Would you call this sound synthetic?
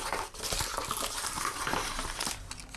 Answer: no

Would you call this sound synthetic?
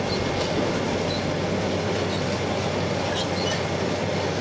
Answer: no